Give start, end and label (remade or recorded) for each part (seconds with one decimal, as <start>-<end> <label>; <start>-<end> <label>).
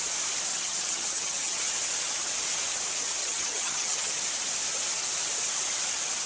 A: 0.0-0.5 recorded; 0.5-1.7 remade; 1.7-3.2 recorded; 3.2-4.1 remade; 4.1-6.3 recorded